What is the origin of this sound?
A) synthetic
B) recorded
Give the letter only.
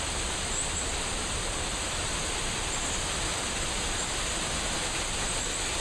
B